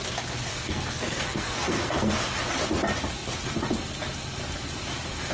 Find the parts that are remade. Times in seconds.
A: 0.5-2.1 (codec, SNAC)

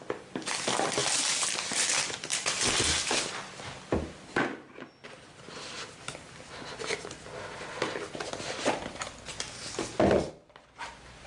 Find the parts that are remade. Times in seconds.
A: 1.0-2.7 (vocoder, BigVGAN v2)